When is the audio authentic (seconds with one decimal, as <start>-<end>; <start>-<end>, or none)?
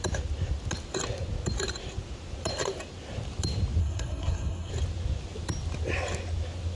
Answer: 0.0-3.8; 4.7-6.8